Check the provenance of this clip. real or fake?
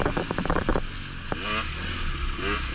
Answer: real